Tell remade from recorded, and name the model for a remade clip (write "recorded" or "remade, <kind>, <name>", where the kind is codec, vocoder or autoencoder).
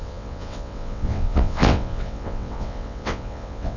remade, vocoder, WaveNeXt